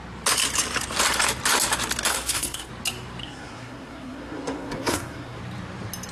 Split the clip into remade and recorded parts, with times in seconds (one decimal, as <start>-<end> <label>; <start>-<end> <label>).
0.0-2.1 recorded; 2.1-2.7 remade; 2.7-3.2 recorded; 3.2-5.4 remade; 5.4-6.1 recorded